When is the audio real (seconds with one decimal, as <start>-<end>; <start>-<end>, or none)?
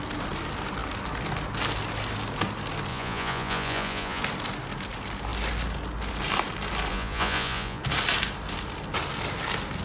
0.0-2.9; 4.2-6.9; 7.8-9.8